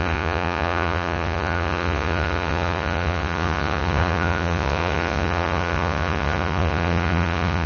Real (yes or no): no